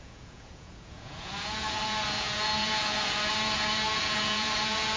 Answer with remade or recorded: remade